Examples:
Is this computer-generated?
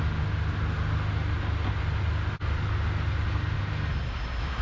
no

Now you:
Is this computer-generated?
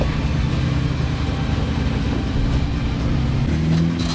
no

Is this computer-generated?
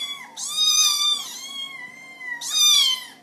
no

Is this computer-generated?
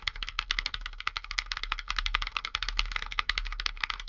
yes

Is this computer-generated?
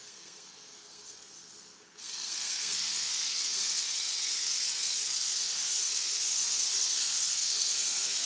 yes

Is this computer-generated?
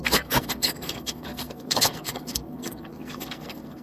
yes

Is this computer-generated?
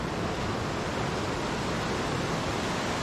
no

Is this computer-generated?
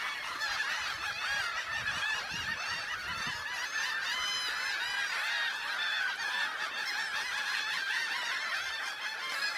no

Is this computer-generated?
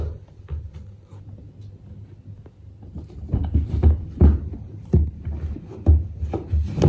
no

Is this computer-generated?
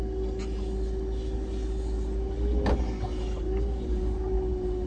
no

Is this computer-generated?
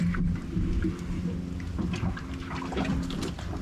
no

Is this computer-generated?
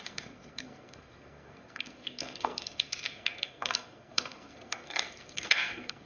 yes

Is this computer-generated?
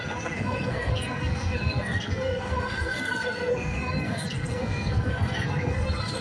yes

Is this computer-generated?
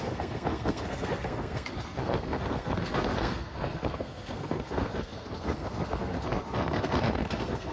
yes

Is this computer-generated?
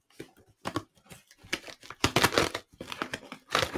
no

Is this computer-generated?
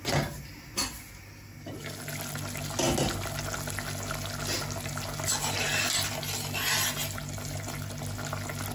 no